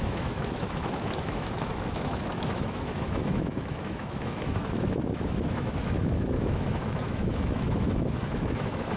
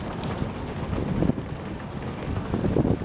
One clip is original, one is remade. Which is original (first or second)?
second